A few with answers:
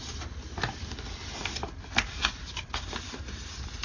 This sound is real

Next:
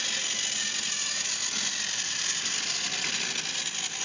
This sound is real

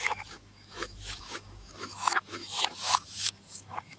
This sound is fake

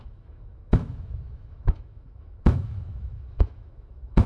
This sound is fake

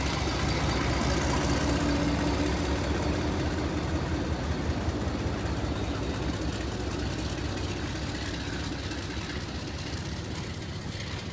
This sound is real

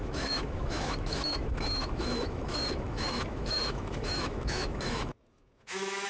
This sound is fake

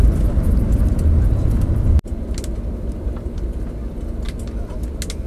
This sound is real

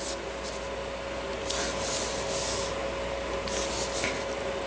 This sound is real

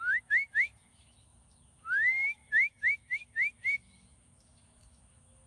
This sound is fake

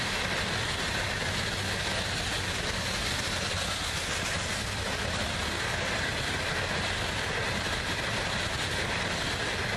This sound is real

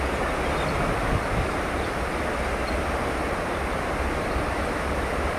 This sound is real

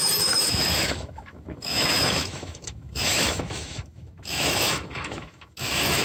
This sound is fake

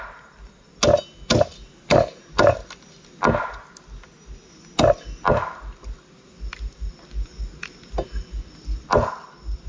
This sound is real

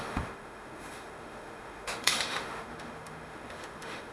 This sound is fake